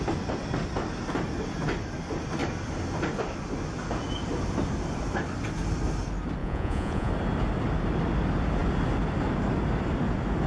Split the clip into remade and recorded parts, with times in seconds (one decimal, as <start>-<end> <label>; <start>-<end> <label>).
0.0-6.4 recorded; 6.4-7.1 remade; 7.1-10.5 recorded